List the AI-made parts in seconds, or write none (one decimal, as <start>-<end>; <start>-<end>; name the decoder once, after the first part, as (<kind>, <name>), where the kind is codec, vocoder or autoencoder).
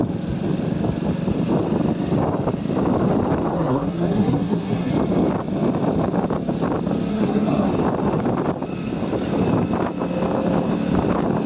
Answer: 3.5-4.9 (codec, SNAC); 7.1-7.7